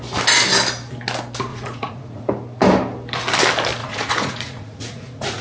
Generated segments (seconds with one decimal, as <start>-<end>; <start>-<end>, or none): 1.5-2.3; 3.8-5.4